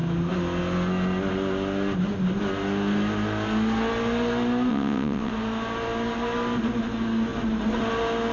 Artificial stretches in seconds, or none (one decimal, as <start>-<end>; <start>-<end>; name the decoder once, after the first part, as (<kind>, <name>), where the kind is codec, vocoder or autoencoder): 4.7-5.3 (vocoder, WaveNeXt)